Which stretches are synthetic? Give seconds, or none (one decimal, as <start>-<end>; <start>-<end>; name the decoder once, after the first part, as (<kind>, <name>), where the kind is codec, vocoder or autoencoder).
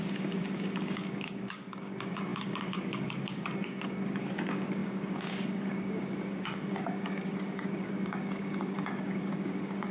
0.0-9.9 (codec, DAC)